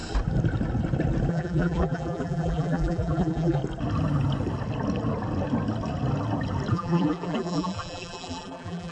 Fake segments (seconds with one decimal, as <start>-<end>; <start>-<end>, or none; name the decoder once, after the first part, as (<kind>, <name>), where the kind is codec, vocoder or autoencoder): 1.3-3.6 (vocoder, BigVGAN v2); 6.7-8.9